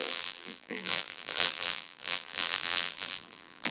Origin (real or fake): fake